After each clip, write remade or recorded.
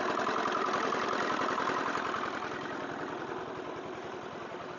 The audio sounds recorded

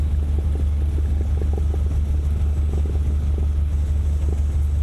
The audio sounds recorded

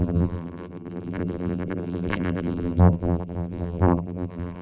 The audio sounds remade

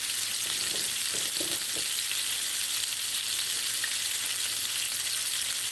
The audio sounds remade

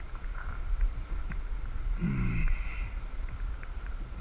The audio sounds recorded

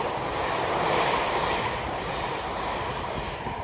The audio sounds recorded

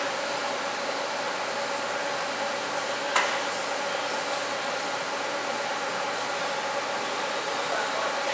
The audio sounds recorded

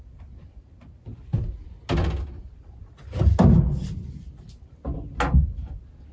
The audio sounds recorded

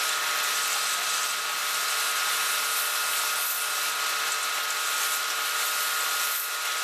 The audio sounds recorded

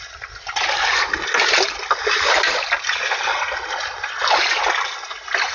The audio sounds recorded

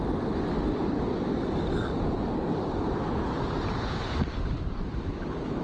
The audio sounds recorded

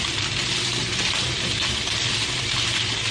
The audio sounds recorded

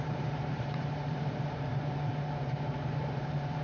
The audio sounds remade